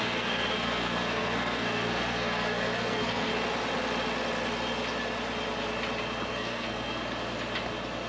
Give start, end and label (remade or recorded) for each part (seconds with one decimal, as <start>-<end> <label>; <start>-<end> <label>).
0.0-3.3 remade; 3.3-6.3 recorded; 6.3-7.0 remade; 7.0-8.1 recorded